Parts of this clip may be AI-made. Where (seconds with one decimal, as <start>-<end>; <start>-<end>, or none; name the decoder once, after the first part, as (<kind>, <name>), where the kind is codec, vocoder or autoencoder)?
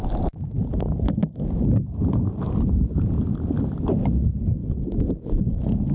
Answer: none